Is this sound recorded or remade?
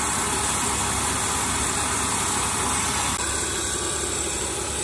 recorded